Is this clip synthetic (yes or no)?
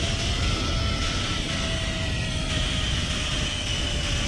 no